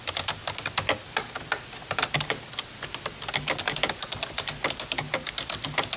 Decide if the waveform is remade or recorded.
recorded